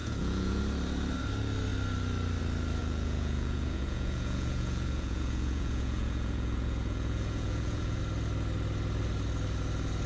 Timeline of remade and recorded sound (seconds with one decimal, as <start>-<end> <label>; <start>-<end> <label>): 0.0-0.6 remade; 0.6-2.8 recorded; 2.8-8.0 remade; 8.0-10.1 recorded